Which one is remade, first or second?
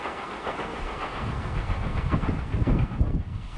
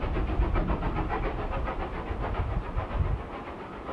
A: first